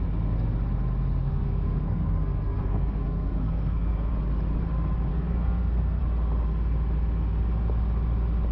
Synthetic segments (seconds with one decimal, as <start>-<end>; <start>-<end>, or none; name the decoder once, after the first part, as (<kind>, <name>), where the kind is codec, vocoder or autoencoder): 1.2-4.1 (codec, SNAC); 5.1-6.0